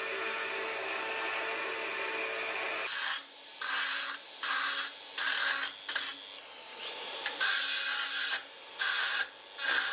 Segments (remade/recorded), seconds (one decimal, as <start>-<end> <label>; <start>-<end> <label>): 0.0-2.8 recorded; 2.8-4.4 remade; 4.4-6.7 recorded; 6.7-7.5 remade; 7.5-8.2 recorded; 8.2-9.2 remade; 9.2-9.9 recorded